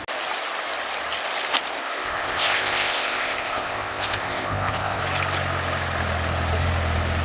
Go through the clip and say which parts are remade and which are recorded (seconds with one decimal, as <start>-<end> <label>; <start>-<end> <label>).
0.0-1.8 recorded; 1.8-5.0 remade; 5.0-7.2 recorded